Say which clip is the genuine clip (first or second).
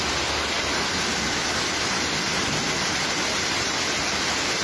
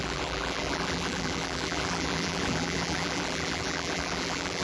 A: first